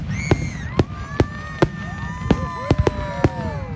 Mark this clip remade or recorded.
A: recorded